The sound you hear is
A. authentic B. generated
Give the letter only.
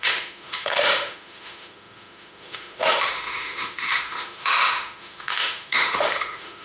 B